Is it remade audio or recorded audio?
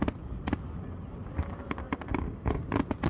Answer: recorded